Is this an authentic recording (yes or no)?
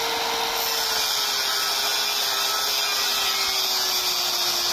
yes